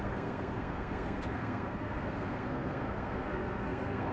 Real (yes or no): no